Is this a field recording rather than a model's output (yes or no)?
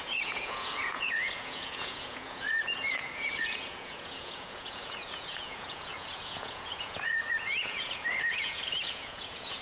no